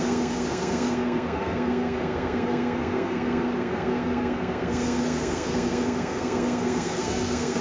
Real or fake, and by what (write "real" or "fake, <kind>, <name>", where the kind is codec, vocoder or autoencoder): fake, codec, SNAC